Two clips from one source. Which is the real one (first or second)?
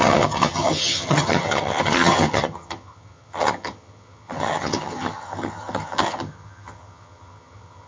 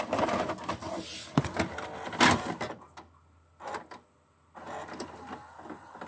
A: second